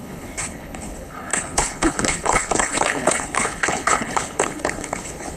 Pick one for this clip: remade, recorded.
remade